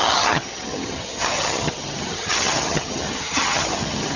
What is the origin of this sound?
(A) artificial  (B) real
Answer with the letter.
A